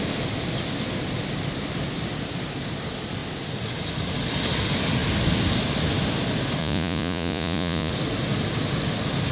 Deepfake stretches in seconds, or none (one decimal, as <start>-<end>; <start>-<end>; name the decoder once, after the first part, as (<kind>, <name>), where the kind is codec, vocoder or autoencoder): 6.6-7.9 (vocoder, Vocos)

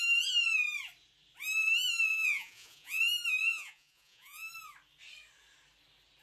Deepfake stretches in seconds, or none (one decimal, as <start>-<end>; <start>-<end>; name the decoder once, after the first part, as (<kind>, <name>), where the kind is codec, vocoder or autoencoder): 2.1-3.0 (vocoder, Vocos); 3.4-4.5

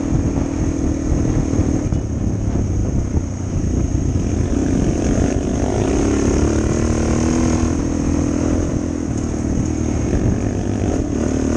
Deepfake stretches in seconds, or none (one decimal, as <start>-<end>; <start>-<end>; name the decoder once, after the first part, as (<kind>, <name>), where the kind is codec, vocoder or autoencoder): 2.8-3.6 (vocoder, BigVGAN v2)

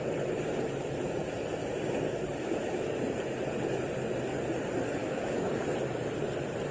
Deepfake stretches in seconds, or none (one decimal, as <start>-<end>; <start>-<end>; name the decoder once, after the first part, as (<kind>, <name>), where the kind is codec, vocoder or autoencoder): 2.4-2.9 (autoencoder, DAC-VAE); 5.0-5.5

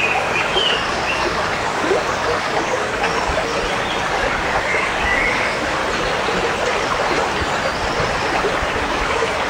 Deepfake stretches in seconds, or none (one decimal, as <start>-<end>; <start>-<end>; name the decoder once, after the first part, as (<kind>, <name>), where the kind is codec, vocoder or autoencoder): 0.0-3.1 (codec, DAC); 4.1-5.8; 8.8-9.5